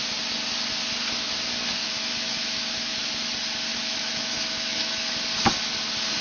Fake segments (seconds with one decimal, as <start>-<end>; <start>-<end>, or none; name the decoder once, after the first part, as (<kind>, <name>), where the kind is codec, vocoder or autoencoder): 1.8-3.1 (autoencoder, DAC-VAE); 3.7-5.1